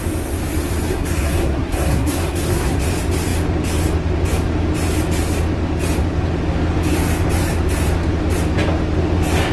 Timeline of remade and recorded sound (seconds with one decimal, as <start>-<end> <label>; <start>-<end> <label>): 0.0-0.9 recorded; 0.9-2.8 remade; 2.8-9.5 recorded